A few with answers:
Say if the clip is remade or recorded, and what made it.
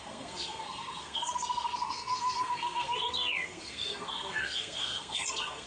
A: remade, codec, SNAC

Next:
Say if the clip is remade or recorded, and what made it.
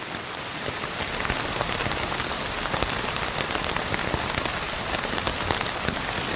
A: recorded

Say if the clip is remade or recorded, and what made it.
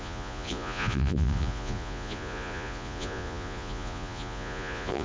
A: remade, vocoder, Vocos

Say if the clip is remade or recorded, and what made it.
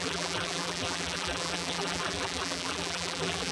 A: remade, vocoder, BigVGAN v2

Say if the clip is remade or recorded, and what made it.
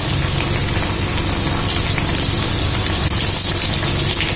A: recorded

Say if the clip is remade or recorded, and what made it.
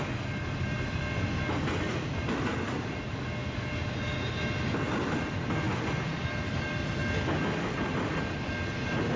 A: recorded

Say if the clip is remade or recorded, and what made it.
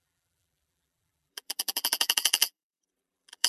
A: remade, vocoder, BigVGAN v2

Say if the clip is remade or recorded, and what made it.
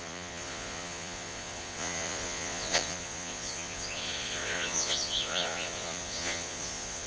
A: remade, vocoder, Vocos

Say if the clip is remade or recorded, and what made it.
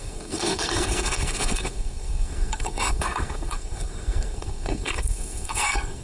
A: remade, codec, SNAC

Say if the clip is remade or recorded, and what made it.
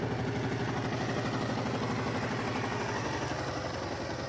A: recorded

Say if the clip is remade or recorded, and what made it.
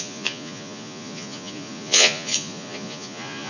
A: remade, vocoder, Vocos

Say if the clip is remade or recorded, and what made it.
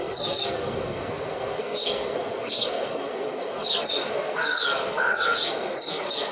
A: remade, codec, SNAC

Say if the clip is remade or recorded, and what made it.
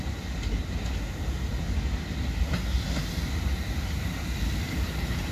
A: recorded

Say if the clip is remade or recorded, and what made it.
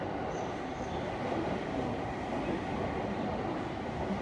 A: remade, vocoder, BigVGAN v2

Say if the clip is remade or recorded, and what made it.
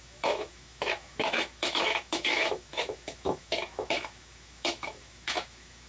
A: remade, autoencoder, DAC-VAE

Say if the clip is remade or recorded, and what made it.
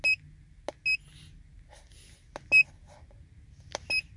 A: recorded